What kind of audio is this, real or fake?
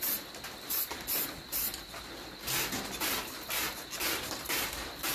real